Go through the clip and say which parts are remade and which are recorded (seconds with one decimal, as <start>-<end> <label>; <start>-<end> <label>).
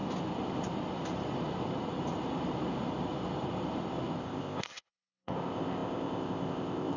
0.0-4.2 recorded; 4.2-7.0 remade